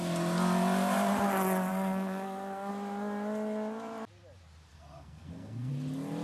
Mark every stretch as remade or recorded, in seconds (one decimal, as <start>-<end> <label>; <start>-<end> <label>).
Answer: 0.0-1.7 recorded; 1.7-2.7 remade; 2.7-4.7 recorded; 4.7-5.7 remade; 5.7-6.2 recorded